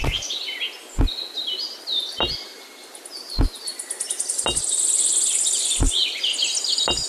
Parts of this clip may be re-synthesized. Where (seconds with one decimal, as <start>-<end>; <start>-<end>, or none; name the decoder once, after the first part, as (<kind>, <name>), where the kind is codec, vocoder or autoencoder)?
none